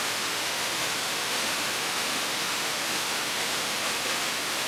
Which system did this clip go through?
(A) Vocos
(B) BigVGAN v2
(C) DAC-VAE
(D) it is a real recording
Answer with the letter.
C